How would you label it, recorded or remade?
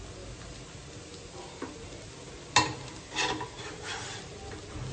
recorded